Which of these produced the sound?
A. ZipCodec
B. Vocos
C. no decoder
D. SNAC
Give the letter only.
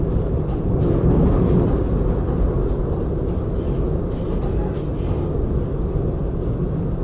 C